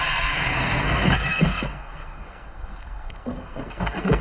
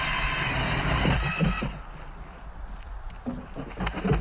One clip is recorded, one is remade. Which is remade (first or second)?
first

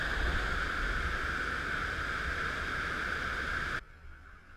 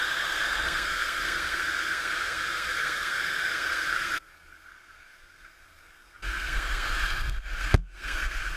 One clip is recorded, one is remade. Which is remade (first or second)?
second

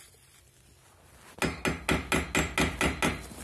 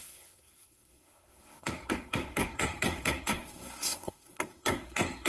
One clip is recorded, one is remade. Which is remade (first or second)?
second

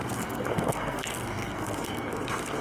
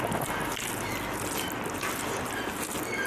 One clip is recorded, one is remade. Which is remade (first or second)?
first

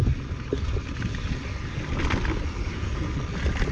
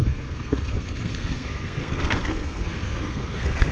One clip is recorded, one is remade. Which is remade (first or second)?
second